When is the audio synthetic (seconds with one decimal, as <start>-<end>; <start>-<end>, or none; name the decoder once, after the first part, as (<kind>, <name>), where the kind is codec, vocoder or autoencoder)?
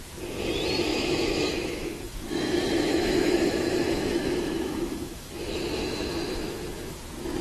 0.9-5.3 (autoencoder, DAC-VAE); 5.8-7.0